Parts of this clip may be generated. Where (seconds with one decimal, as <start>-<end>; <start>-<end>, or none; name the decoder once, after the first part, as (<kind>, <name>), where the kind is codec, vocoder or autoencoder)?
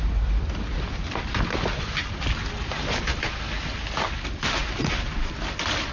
0.0-2.0 (vocoder, BigVGAN v2); 2.7-3.1; 4.0-4.6; 5.2-5.9